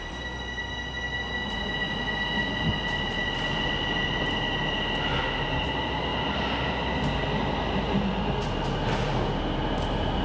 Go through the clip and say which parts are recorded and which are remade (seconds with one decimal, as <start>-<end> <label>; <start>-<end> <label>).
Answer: 0.0-10.2 recorded